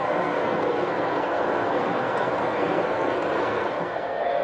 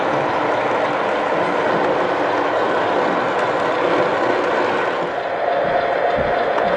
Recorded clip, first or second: second